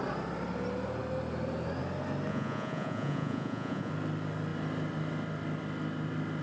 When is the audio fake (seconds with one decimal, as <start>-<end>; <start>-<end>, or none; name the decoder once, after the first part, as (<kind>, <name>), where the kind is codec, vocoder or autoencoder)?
2.3-3.9 (vocoder, Vocos)